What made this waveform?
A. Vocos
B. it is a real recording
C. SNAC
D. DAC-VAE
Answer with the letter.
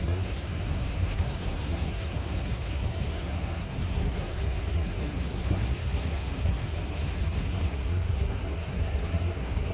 C